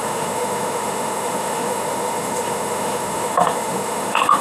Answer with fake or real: fake